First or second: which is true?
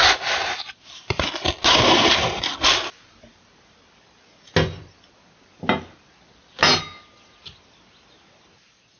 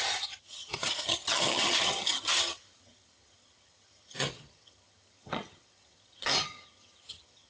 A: first